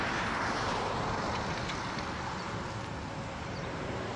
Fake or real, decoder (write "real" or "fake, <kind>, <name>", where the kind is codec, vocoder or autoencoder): real